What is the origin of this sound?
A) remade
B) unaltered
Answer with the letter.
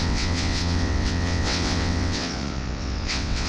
A